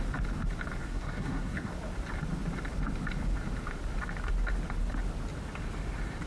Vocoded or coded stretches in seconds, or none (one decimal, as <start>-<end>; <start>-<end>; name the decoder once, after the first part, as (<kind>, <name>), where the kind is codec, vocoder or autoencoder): 0.8-1.7 (codec, SNAC)